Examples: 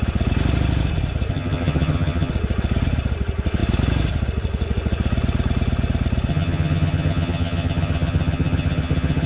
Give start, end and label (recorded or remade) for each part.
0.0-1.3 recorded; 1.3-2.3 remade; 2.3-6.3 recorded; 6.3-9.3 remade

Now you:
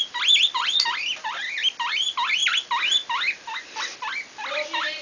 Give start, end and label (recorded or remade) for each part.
0.0-5.0 recorded

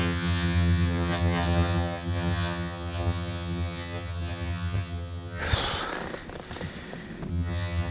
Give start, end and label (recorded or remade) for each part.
0.0-5.4 remade; 5.4-7.3 recorded; 7.3-7.9 remade

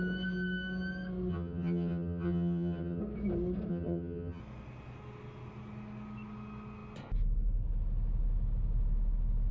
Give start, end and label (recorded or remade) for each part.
0.0-1.3 recorded; 1.3-3.0 remade; 3.0-3.7 recorded; 3.7-4.4 remade; 4.4-9.5 recorded

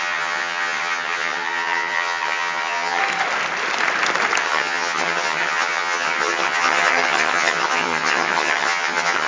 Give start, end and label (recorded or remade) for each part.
0.0-3.0 remade; 3.0-4.4 recorded; 4.4-9.3 remade